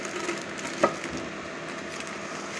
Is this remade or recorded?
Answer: recorded